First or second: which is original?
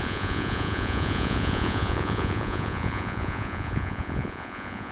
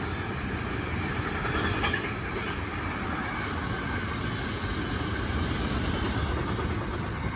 second